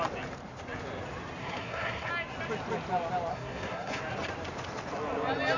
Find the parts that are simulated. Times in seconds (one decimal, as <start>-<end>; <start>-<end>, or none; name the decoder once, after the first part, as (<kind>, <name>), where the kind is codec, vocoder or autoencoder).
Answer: 1.4-2.1 (codec, SNAC); 3.3-4.0

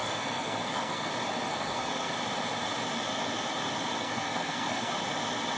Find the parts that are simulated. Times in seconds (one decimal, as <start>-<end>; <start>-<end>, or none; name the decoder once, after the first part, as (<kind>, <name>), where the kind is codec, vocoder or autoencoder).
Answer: 0.0-1.1 (codec, SNAC); 1.5-2.1; 4.0-4.9

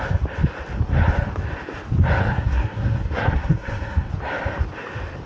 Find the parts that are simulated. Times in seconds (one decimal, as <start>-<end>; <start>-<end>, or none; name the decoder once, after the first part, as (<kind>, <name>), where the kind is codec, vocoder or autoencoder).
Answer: 2.2-4.1 (codec, SNAC)